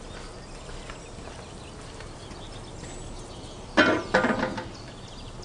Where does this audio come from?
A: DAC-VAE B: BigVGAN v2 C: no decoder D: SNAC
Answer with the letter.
C